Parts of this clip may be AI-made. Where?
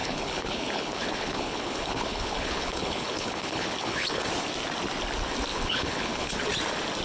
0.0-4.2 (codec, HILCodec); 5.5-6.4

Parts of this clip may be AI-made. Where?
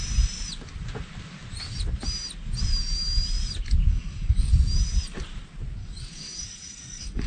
3.9-4.5 (codec, DAC); 5.8-7.3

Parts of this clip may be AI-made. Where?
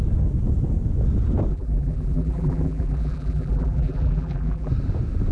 1.5-4.7 (vocoder, BigVGAN v2)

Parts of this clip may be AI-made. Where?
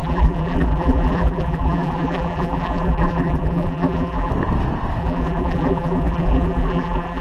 0.0-4.3 (vocoder, BigVGAN v2); 5.0-7.2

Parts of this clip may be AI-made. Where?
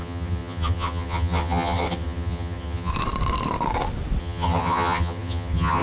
0.0-2.9 (vocoder, HiFi-GAN); 4.2-5.8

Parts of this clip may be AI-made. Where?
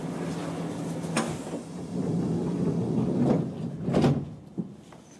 none